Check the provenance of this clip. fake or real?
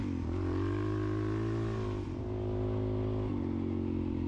real